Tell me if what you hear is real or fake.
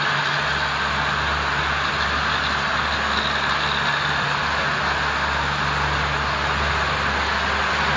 real